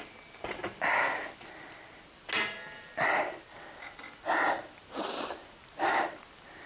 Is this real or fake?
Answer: real